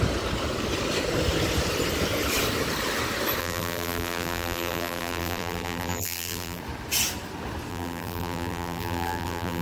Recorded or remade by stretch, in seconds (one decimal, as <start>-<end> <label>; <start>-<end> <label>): 0.0-3.4 recorded; 3.4-6.6 remade; 6.6-7.7 recorded; 7.7-9.6 remade